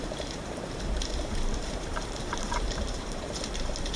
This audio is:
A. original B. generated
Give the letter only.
B